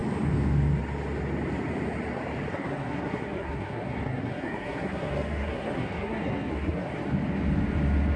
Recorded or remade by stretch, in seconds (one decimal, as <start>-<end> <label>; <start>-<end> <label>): 0.0-2.5 recorded; 2.5-6.9 remade; 6.9-8.2 recorded